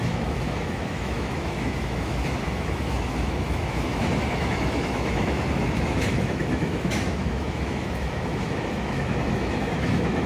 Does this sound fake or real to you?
fake